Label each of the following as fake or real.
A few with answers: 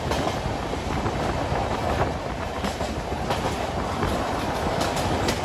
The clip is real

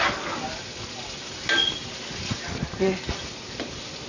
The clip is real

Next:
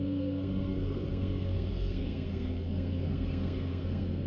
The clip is fake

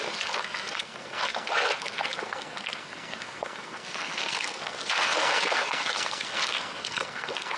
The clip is fake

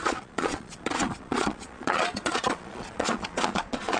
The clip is fake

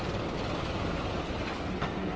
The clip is real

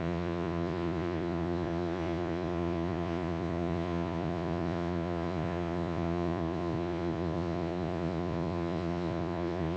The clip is fake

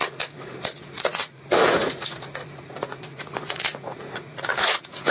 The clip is fake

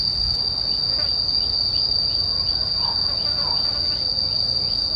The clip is real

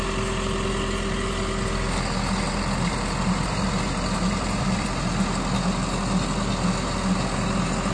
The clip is real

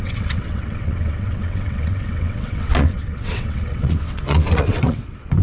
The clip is fake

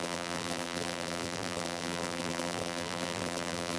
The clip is fake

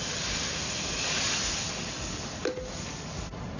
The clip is real